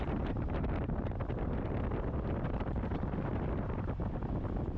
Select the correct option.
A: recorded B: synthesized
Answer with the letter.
A